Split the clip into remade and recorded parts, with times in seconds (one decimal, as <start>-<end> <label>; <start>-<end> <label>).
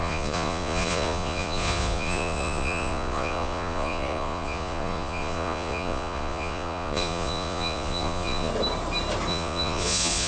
0.0-8.5 remade; 8.5-9.3 recorded; 9.3-10.3 remade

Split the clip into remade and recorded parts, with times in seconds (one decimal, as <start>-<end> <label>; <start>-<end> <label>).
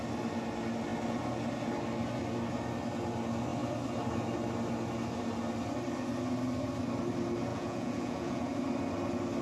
0.0-7.5 recorded; 7.5-8.5 remade; 8.5-9.4 recorded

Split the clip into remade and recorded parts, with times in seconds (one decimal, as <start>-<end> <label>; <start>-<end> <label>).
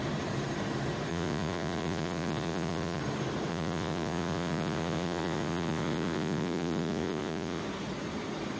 0.0-1.1 recorded; 1.1-3.0 remade; 3.0-3.5 recorded; 3.5-7.6 remade; 7.6-8.6 recorded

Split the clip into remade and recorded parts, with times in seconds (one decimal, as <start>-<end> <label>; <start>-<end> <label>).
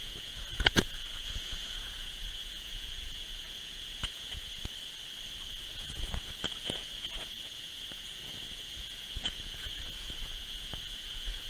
0.0-4.6 remade; 4.6-5.7 recorded; 5.7-11.5 remade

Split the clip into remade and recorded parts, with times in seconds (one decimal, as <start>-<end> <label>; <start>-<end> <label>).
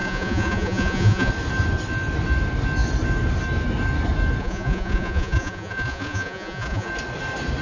0.0-1.3 remade; 1.3-4.4 recorded; 4.4-6.9 remade; 6.9-7.6 recorded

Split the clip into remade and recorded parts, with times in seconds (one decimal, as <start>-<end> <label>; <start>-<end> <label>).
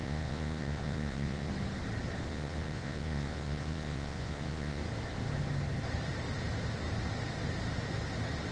0.0-1.5 remade; 1.5-2.3 recorded; 2.3-4.8 remade; 4.8-8.5 recorded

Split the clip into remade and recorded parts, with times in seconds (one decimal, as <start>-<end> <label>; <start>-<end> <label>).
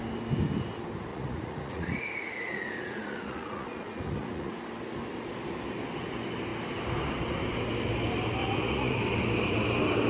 0.0-1.1 recorded; 1.1-4.5 remade; 4.5-8.4 recorded; 8.4-9.0 remade; 9.0-10.1 recorded